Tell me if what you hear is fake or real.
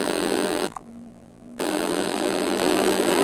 fake